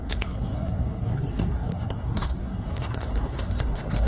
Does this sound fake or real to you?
fake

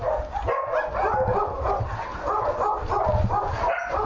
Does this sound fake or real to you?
real